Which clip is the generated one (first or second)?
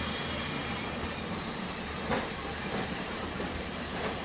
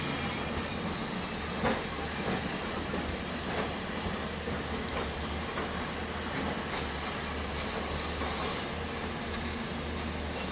first